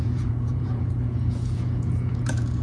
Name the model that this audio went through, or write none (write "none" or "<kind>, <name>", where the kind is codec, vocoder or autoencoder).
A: vocoder, Vocos